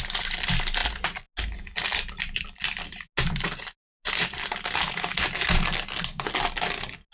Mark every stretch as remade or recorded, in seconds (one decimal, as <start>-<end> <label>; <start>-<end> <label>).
0.0-7.1 recorded